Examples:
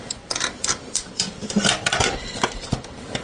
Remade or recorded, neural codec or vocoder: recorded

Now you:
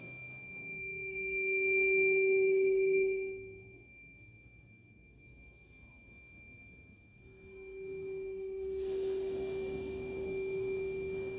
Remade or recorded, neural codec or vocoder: remade, codec, SNAC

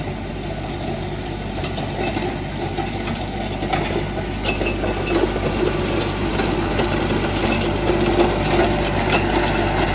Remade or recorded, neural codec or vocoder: recorded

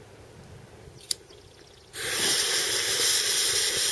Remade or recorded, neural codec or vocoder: recorded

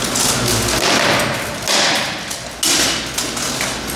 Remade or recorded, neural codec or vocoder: recorded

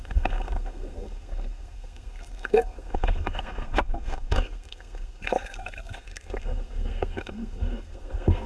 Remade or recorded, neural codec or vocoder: remade, codec, SNAC